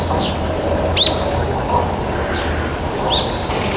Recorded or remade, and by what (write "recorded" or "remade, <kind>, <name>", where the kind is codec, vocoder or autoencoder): recorded